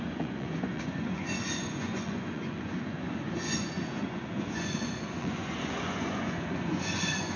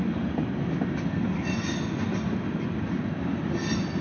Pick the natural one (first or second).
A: second